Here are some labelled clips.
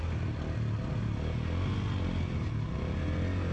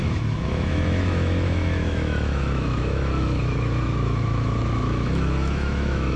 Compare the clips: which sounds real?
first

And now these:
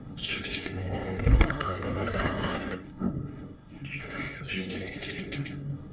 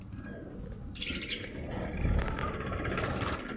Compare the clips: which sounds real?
second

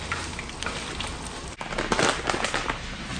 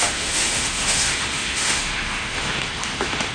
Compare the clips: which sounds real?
first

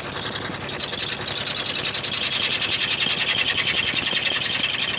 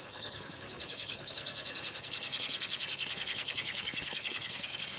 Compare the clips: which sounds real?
first